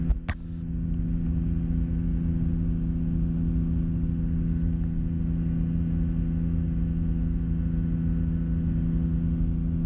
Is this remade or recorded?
recorded